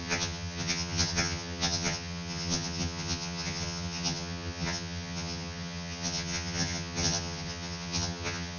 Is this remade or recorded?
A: remade